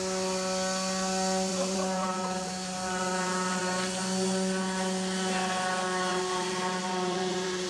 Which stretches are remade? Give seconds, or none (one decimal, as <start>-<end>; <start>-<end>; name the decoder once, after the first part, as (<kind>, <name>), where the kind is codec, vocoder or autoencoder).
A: 1.5-3.6 (vocoder, BigVGAN v2); 6.1-7.7